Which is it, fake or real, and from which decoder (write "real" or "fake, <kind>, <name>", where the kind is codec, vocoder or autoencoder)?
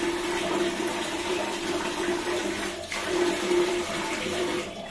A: fake, vocoder, BigVGAN v2